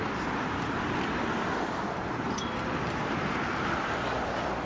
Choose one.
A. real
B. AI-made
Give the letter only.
A